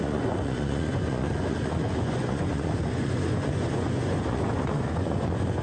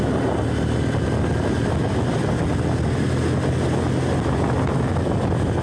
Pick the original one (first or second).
second